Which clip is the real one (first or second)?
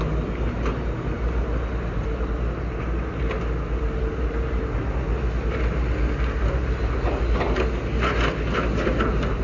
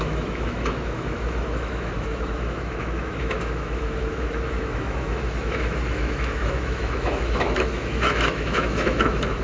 first